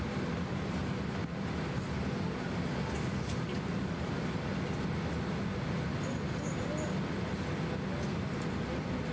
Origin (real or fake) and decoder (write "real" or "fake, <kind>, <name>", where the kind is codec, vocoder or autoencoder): real